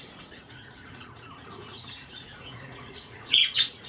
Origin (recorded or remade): remade